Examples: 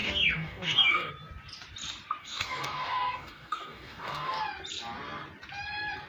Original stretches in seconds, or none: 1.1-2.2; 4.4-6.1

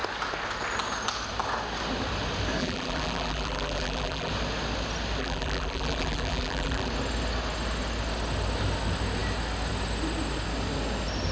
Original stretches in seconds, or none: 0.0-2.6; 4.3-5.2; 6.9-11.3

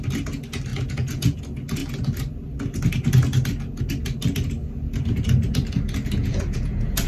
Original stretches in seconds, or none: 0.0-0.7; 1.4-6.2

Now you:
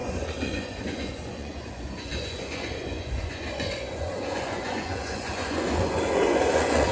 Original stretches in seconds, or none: none

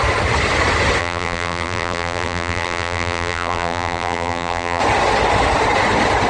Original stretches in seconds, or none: 0.0-1.0; 4.8-6.3

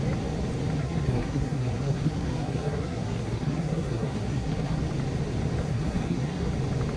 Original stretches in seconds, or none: 0.0-0.8; 4.8-5.6; 6.5-7.0